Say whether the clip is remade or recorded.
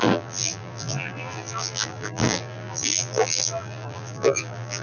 remade